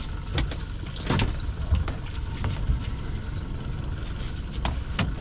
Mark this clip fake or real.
real